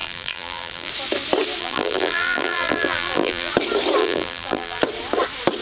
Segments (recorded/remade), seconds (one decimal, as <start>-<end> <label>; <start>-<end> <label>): 0.0-0.9 remade; 0.9-1.6 recorded; 1.6-3.5 remade; 3.5-4.0 recorded; 4.0-4.8 remade; 4.8-5.6 recorded

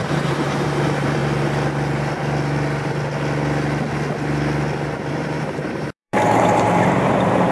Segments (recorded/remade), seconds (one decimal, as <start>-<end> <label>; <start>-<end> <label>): 0.0-1.2 remade; 1.2-5.1 recorded; 5.1-7.5 remade